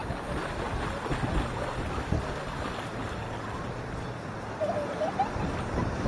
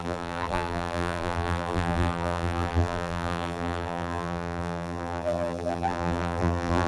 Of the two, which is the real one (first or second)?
first